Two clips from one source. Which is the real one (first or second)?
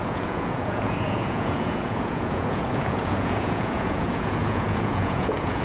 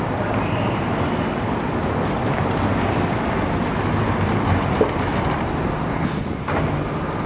second